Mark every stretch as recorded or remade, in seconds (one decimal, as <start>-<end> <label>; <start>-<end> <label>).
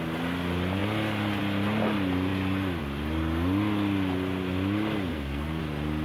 0.0-5.1 recorded; 5.1-5.6 remade; 5.6-6.0 recorded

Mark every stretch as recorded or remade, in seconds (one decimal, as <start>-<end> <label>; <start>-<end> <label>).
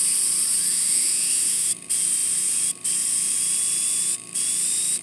0.0-0.7 recorded; 0.7-1.7 remade; 1.7-5.0 recorded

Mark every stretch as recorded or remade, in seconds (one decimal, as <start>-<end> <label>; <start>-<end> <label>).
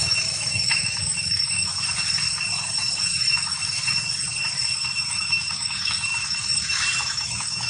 0.0-1.7 remade; 1.7-3.2 recorded; 3.2-3.8 remade; 3.8-5.1 recorded; 5.1-7.7 remade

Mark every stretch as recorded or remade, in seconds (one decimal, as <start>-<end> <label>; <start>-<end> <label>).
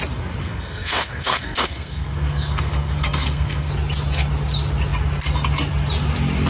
0.0-0.4 recorded; 0.4-3.7 remade; 3.7-6.5 recorded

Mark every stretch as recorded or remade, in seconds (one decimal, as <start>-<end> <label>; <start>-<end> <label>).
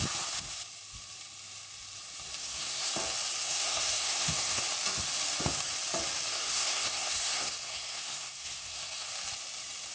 0.0-2.4 recorded; 2.4-2.9 remade; 2.9-3.4 recorded; 3.4-4.6 remade; 4.6-6.3 recorded; 6.3-9.1 remade; 9.1-9.9 recorded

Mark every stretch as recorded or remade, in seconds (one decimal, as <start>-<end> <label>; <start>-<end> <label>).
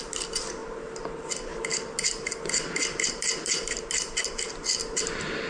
0.0-5.5 recorded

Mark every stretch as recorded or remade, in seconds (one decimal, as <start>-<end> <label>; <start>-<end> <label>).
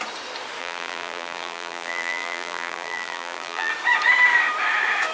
0.0-0.6 recorded; 0.6-3.7 remade; 3.7-5.1 recorded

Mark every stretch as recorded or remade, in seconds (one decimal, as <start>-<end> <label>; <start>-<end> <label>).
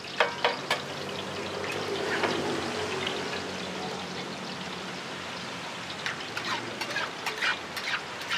0.0-1.7 recorded; 1.7-2.6 remade; 2.6-8.4 recorded